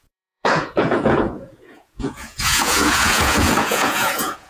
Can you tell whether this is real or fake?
fake